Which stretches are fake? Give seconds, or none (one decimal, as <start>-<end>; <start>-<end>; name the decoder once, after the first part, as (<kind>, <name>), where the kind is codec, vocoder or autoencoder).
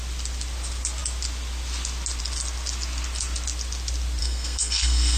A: 4.2-5.2 (codec, SNAC)